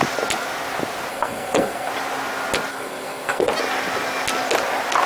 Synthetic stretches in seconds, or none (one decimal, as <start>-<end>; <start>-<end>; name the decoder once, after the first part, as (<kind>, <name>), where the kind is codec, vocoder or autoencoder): 1.1-1.9 (codec, SNAC); 2.7-3.5